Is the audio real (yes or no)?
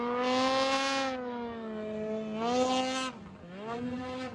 yes